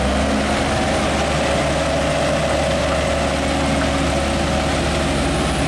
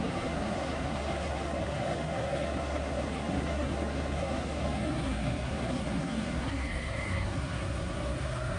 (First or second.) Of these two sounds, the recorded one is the first